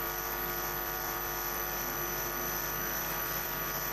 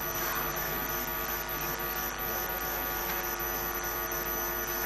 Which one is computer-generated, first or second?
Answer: first